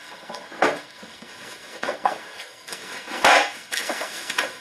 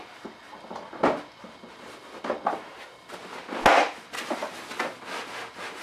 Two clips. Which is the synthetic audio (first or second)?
first